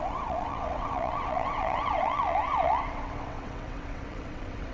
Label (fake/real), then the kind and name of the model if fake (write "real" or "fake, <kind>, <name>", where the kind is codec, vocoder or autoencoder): fake, vocoder, WaveNeXt